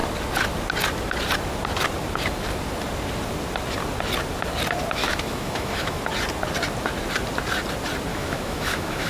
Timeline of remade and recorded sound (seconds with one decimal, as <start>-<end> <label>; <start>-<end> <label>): 0.0-5.0 recorded; 5.0-6.0 remade; 6.0-8.1 recorded; 8.1-9.1 remade